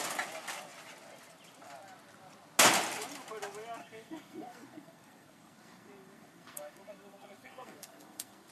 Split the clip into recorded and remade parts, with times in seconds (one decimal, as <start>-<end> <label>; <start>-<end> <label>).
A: 0.0-3.8 recorded; 3.8-8.5 remade